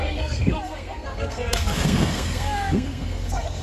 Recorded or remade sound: remade